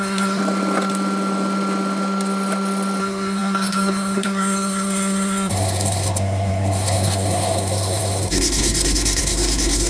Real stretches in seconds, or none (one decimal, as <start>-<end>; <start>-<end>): 0.4-3.0